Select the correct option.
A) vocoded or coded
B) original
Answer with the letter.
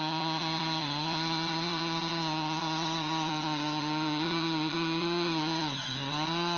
A